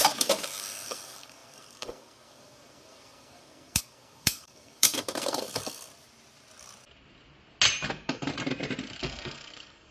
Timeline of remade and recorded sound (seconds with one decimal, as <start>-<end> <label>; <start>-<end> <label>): 0.0-5.9 remade; 5.9-7.9 recorded; 7.9-8.3 remade; 8.3-9.0 recorded; 9.0-9.9 remade